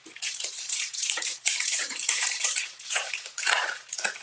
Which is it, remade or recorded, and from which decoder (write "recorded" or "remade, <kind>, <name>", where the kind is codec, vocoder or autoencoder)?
remade, vocoder, Vocos